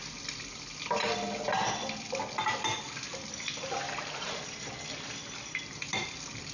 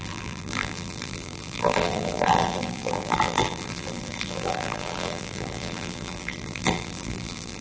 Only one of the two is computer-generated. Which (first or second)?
second